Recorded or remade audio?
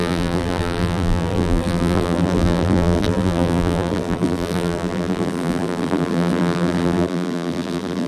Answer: remade